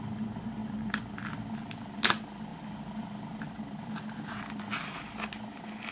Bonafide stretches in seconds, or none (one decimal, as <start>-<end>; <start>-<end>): 0.0-5.9